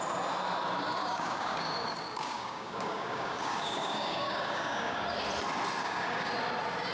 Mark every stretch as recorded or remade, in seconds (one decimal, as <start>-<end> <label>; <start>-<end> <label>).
0.0-1.0 recorded; 1.0-5.0 remade; 5.0-5.8 recorded; 5.8-6.3 remade; 6.3-6.9 recorded